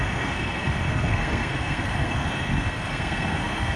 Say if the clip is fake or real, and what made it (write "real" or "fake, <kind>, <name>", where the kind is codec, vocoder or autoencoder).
fake, codec, SNAC